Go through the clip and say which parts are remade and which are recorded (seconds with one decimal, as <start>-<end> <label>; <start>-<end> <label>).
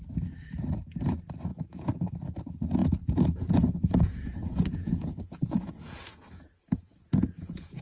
0.0-1.5 recorded; 1.5-2.1 remade; 2.1-2.8 recorded; 2.8-7.8 remade